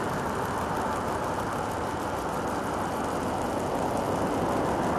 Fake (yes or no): no